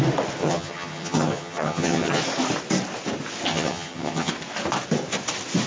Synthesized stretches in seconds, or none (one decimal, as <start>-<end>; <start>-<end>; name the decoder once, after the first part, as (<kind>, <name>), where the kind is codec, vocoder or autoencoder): 0.4-2.2 (vocoder, HiFi-GAN); 3.5-4.3